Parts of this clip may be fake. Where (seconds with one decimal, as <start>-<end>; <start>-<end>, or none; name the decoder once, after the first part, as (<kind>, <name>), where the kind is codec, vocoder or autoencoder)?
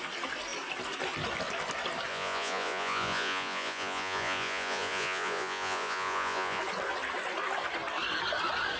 2.1-6.6 (vocoder, Vocos)